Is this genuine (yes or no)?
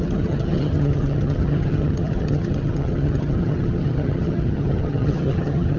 no